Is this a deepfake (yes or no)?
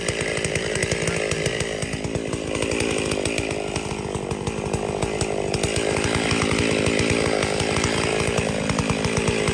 no